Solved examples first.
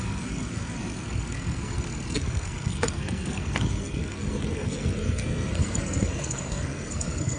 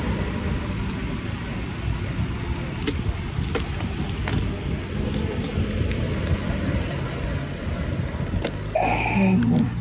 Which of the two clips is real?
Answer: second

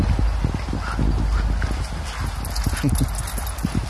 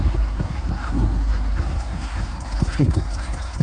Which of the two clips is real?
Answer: first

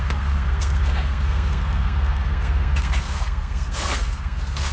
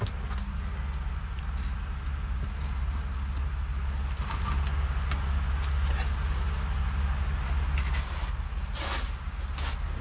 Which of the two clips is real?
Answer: second